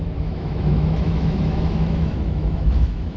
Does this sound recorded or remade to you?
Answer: remade